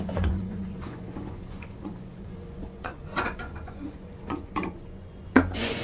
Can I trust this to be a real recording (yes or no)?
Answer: no